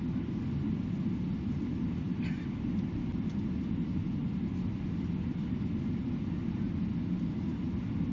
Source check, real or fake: real